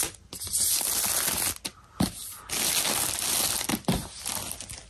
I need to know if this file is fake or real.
real